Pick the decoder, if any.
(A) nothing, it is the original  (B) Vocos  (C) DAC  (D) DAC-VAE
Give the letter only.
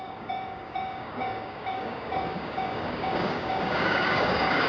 C